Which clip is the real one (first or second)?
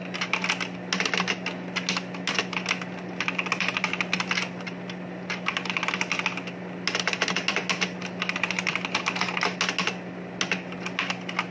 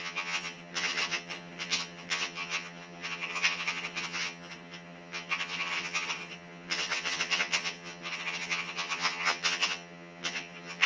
first